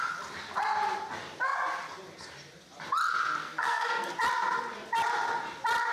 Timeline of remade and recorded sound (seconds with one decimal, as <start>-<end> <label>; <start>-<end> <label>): 0.0-3.4 recorded; 3.4-4.1 remade; 4.1-5.9 recorded